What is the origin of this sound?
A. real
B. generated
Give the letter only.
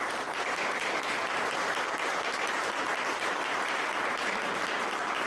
B